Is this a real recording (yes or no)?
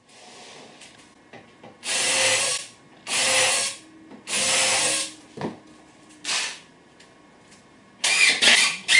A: yes